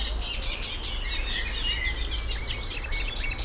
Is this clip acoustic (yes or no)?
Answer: yes